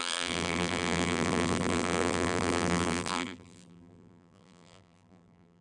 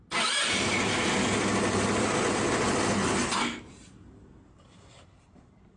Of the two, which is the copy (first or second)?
first